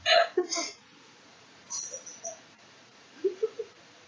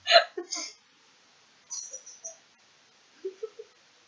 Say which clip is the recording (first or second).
second